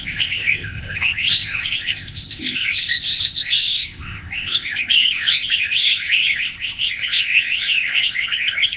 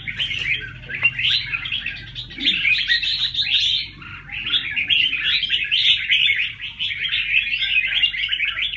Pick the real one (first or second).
second